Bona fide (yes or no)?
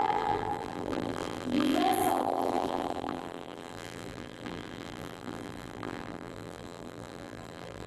no